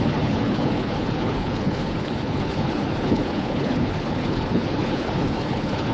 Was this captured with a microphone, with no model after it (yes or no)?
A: no